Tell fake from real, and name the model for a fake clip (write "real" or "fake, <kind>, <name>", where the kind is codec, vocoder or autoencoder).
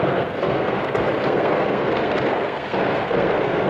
fake, codec, SNAC